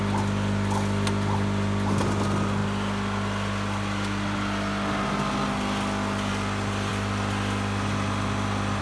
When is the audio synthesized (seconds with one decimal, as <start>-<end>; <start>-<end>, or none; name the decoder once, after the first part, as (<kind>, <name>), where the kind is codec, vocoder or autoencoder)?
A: none